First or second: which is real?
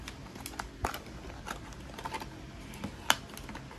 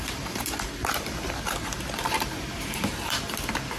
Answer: first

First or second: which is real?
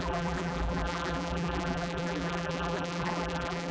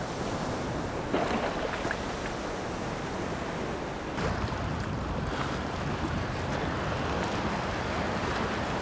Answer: second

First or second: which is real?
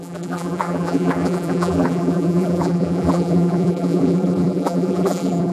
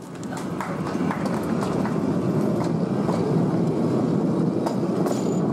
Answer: second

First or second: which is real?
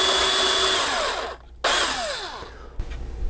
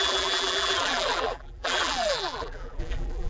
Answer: first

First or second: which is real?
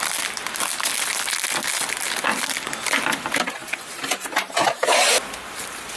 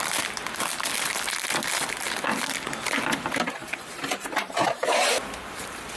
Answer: first